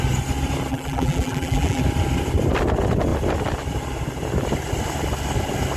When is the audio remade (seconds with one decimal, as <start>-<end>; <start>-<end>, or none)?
0.7-1.8